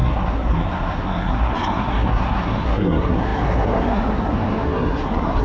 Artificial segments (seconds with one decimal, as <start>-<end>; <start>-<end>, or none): 0.0-5.4